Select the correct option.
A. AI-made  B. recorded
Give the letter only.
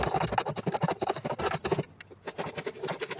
B